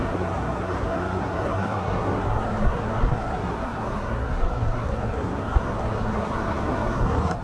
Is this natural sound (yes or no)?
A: no